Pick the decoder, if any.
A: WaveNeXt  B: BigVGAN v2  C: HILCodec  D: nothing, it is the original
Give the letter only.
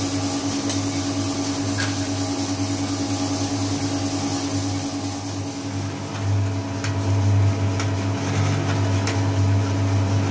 D